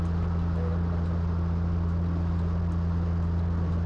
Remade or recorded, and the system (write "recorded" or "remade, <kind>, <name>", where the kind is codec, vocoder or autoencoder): recorded